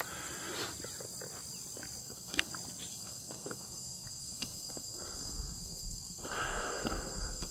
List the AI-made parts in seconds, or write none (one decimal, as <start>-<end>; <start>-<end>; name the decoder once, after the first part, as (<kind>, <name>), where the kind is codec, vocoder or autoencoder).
2.0-2.5 (codec, SNAC); 2.9-7.5